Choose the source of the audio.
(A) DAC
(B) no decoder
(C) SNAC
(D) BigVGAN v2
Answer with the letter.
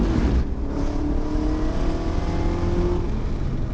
B